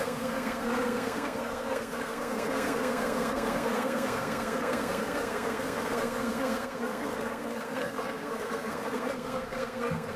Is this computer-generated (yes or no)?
yes